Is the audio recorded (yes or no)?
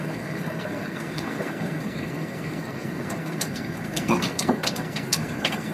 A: no